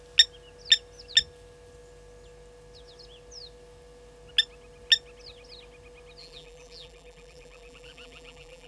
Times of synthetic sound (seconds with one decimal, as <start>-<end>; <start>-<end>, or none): 6.2-8.7